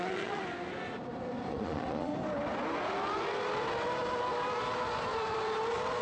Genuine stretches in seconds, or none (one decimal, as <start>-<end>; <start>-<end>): 0.4-1.5; 2.1-6.0